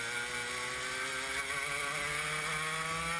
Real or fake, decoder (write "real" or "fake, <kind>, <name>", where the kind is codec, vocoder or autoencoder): real